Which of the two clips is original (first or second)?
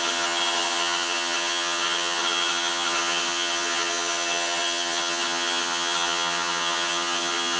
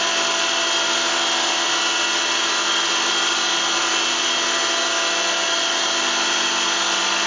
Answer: second